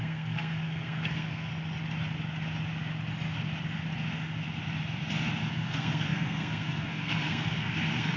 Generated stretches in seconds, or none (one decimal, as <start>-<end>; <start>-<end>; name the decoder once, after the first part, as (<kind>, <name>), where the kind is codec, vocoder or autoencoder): 0.0-1.5 (codec, SNAC); 5.5-8.2

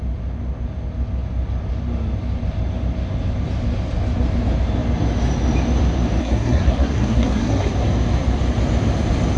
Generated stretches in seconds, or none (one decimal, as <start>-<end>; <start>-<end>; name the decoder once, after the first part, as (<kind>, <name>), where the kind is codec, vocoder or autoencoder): 6.2-7.7 (codec, SNAC)

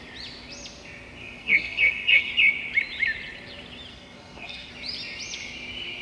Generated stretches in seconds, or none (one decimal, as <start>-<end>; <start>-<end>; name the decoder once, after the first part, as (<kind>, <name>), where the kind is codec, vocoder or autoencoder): 1.2-2.3 (codec, SNAC); 3.9-4.7

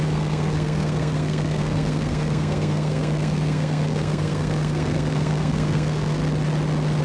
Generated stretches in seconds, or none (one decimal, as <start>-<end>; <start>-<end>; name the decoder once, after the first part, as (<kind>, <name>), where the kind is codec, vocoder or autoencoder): 0.0-6.2 (codec, SNAC)

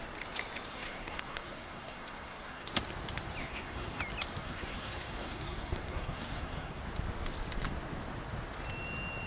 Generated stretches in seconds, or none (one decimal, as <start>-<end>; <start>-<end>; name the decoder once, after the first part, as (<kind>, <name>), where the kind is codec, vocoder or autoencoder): 0.7-2.7 (codec, SNAC); 3.4-4.0; 4.4-6.8

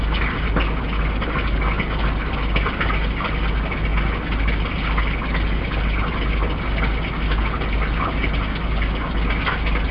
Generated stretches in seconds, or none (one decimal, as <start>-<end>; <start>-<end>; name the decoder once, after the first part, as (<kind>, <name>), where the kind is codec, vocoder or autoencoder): none